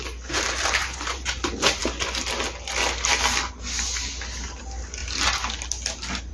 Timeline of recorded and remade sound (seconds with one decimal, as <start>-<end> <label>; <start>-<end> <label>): 0.0-0.8 recorded; 0.8-1.4 remade; 1.4-6.3 recorded